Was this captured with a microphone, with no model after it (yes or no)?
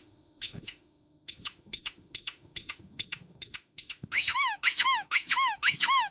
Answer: no